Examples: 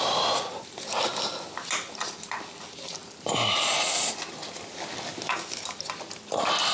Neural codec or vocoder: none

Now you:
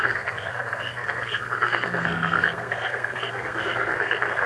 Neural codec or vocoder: codec, SNAC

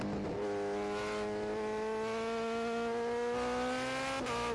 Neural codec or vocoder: none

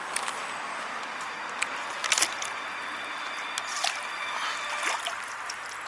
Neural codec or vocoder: none